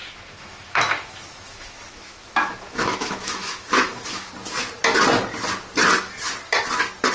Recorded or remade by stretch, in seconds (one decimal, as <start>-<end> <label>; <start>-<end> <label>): 0.0-4.3 remade; 4.3-7.1 recorded